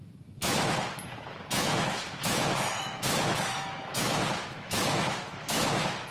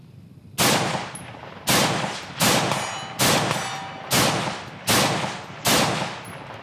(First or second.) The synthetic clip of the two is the first